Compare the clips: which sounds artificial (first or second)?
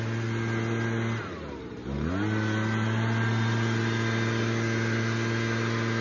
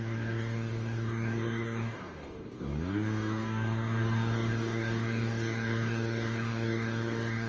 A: second